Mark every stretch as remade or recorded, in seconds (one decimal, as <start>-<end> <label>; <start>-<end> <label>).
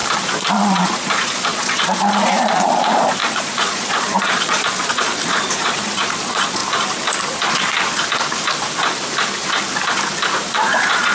0.0-0.5 recorded; 0.5-6.6 remade; 6.6-10.5 recorded; 10.5-11.1 remade